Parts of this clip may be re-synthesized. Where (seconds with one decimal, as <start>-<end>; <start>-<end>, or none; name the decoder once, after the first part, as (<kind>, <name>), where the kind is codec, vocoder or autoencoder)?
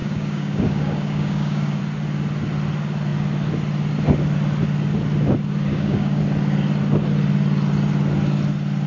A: 0.0-1.8 (codec, DAC); 5.7-6.2